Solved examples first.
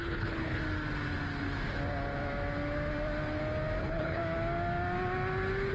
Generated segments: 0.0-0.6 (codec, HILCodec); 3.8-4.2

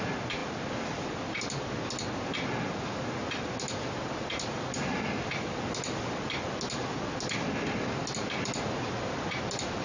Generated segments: none

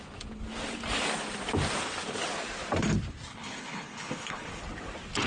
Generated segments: 3.3-4.6 (codec, HILCodec)

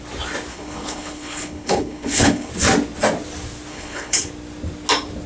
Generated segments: 0.5-2.5 (codec, HILCodec); 3.7-4.3

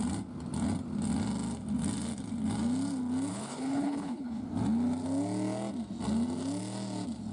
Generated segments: 3.3-4.4 (codec, HILCodec)

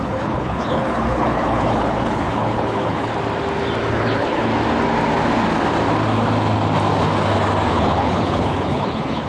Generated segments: 0.0-3.1 (codec, HILCodec); 3.9-4.5; 7.7-9.3

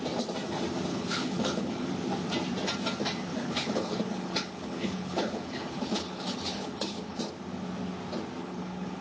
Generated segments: 0.9-1.9 (codec, HILCodec); 3.3-7.2; 8.4-9.0

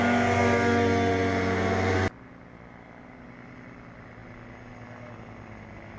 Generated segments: none